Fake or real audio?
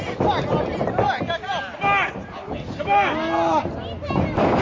real